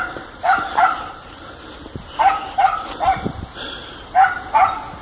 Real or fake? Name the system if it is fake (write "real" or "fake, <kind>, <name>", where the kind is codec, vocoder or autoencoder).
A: real